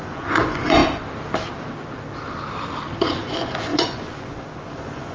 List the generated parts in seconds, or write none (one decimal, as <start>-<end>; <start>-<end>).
0.0-0.8; 3.0-5.1